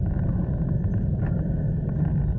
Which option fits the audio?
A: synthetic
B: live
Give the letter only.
B